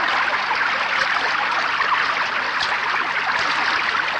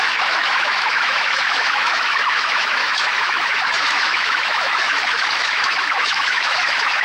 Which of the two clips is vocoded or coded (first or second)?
second